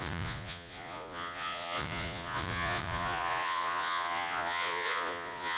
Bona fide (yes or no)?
no